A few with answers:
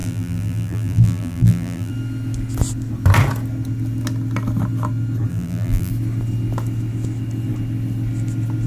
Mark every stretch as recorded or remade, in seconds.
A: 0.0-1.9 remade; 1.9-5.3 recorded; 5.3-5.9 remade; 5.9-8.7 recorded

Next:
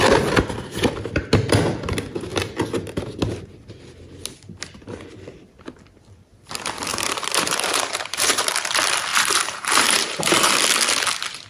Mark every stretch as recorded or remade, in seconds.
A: 0.0-6.9 recorded; 6.9-8.5 remade; 8.5-9.1 recorded; 9.1-10.5 remade; 10.5-11.5 recorded

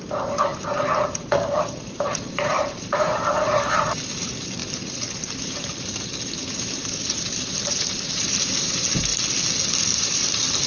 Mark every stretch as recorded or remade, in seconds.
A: 0.0-0.5 remade; 0.5-1.0 recorded; 1.0-9.1 remade; 9.1-9.9 recorded; 9.9-10.7 remade